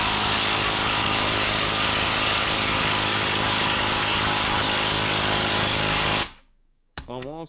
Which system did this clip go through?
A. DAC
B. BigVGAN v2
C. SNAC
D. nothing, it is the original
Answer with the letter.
A